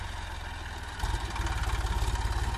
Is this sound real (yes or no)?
yes